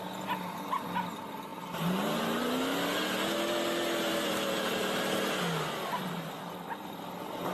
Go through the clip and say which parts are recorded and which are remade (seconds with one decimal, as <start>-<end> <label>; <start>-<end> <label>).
0.0-4.1 recorded; 4.1-5.0 remade; 5.0-7.5 recorded